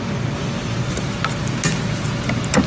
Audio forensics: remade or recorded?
recorded